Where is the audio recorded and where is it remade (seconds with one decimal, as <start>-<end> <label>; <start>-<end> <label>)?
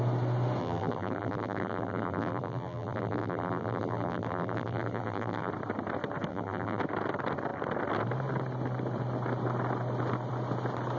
0.0-0.6 recorded; 0.6-5.5 remade; 5.5-6.3 recorded; 6.3-6.8 remade; 6.8-11.0 recorded